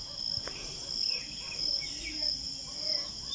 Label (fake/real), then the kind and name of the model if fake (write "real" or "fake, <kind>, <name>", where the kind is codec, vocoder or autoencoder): real